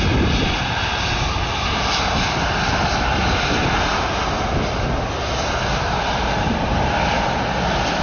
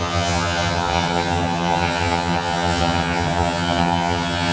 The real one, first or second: first